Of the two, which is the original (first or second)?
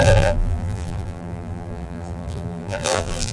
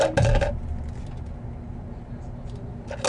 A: second